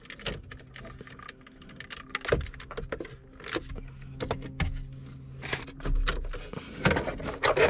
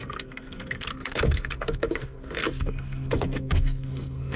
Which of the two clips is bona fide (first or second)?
first